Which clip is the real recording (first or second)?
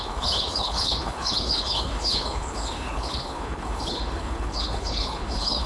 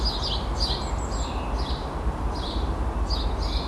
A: second